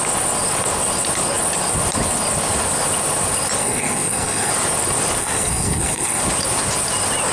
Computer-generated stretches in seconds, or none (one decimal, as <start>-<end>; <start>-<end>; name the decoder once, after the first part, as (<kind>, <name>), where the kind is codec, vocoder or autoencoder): 3.6-4.5 (codec, SNAC); 5.2-6.2